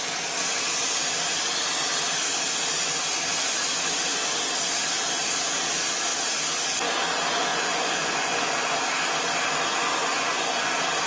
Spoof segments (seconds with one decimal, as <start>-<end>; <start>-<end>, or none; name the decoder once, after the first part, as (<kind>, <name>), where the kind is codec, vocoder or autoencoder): 7.5-8.8 (vocoder, Vocos); 10.0-10.7